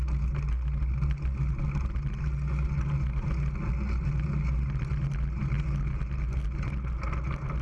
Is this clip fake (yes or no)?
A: no